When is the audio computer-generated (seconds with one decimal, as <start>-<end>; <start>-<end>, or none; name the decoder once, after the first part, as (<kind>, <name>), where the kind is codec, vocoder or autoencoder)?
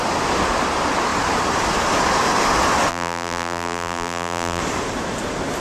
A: 2.9-4.6 (vocoder, BigVGAN v2)